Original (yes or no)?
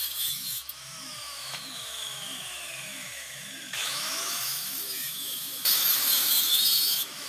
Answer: no